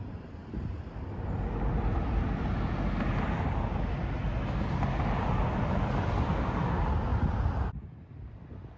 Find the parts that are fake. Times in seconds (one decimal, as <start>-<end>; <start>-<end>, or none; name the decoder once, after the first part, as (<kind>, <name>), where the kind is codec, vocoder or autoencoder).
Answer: none